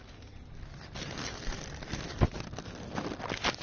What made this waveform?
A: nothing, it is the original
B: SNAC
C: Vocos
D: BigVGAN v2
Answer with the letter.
A